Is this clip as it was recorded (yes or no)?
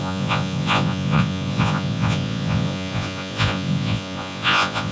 no